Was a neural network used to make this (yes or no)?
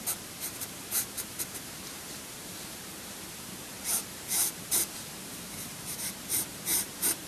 yes